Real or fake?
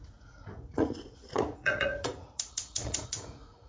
fake